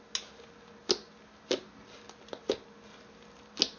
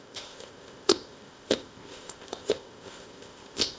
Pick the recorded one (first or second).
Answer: first